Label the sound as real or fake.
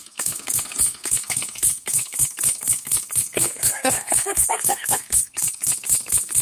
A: fake